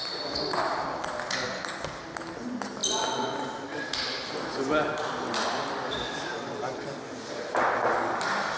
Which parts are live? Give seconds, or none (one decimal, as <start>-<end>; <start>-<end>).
0.0-8.6